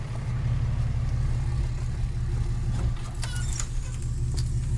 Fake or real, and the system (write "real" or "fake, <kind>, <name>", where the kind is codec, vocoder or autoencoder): real